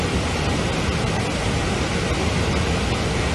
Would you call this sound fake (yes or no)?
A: no